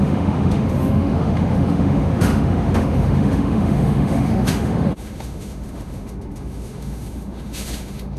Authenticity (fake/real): fake